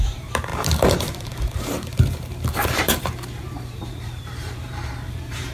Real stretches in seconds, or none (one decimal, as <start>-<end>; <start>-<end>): none